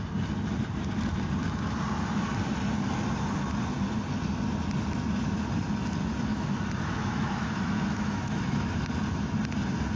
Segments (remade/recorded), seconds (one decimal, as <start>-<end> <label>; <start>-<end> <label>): 0.0-6.3 recorded; 6.3-8.7 remade; 8.7-10.0 recorded